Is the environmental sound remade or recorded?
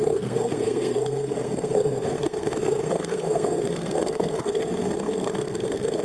remade